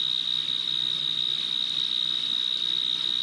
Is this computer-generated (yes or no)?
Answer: no